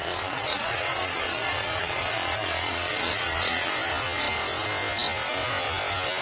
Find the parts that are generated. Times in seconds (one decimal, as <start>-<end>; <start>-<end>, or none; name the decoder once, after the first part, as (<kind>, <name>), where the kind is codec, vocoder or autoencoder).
0.0-3.7 (vocoder, Vocos)